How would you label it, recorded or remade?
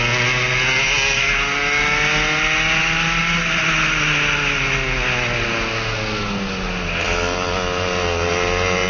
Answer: recorded